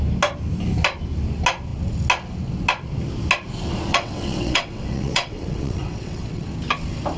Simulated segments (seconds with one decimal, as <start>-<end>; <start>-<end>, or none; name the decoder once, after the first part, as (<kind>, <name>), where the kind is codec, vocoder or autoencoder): 3.9-6.5 (vocoder, WaveNeXt)